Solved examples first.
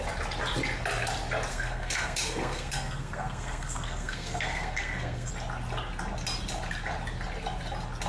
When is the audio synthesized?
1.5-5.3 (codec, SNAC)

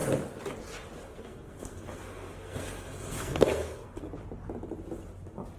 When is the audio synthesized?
1.1-4.1 (codec, SNAC)

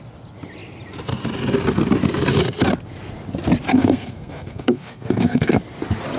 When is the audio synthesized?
3.7-5.6 (codec, SNAC)

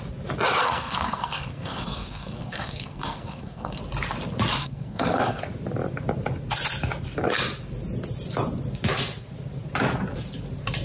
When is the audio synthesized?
0.6-3.8 (codec, SNAC); 4.6-5.4

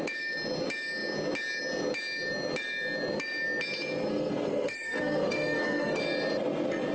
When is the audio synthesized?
4.1-6.0 (codec, SNAC)

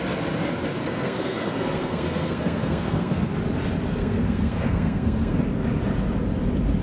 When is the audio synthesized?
0.8-3.3 (codec, SNAC); 3.9-5.4